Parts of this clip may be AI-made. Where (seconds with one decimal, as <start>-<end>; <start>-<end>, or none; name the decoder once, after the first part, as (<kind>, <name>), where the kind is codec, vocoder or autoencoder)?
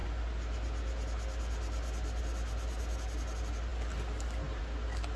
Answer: none